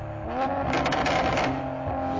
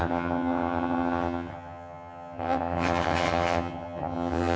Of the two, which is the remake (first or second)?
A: second